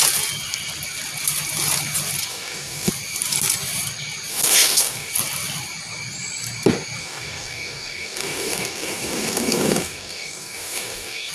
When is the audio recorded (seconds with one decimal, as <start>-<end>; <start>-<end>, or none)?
0.0-2.3; 2.9-4.3; 5.1-7.0